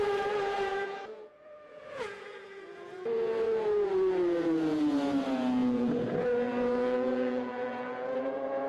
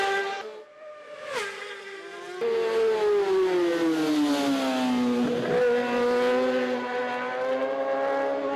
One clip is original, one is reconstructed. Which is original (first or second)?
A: second